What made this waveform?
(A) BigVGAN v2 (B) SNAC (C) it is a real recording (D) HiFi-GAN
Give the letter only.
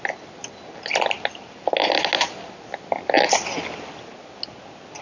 C